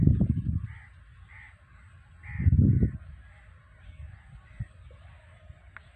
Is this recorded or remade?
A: recorded